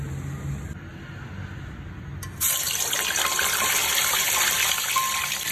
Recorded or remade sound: recorded